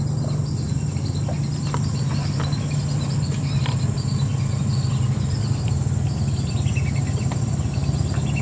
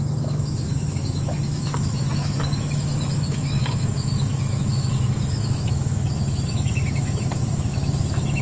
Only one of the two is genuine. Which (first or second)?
first